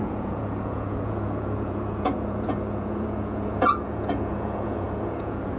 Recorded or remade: remade